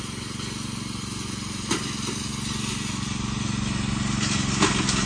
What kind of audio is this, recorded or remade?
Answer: recorded